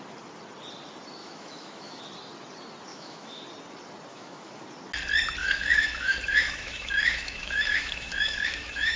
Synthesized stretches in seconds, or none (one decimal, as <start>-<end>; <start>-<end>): 1.2-2.0; 2.9-3.4; 4.1-4.6; 5.4-9.0